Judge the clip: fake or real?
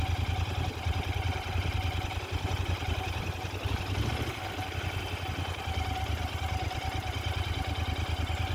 real